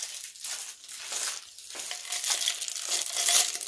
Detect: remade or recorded recorded